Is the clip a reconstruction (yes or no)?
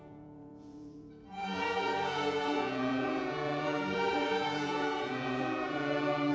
yes